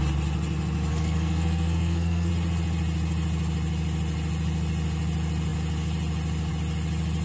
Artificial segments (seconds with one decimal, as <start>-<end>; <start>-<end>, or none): 0.9-2.3